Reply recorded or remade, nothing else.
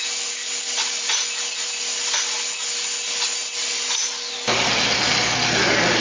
recorded